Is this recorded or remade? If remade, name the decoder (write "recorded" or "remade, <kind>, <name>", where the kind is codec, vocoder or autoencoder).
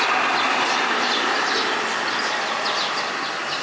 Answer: recorded